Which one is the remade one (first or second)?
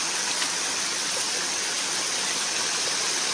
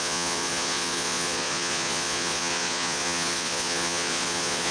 second